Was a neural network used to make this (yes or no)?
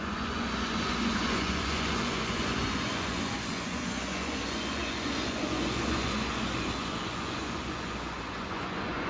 yes